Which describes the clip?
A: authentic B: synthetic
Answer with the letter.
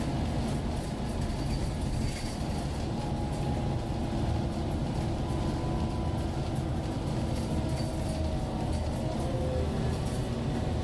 A